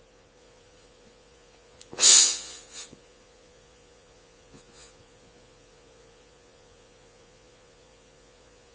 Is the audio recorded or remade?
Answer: remade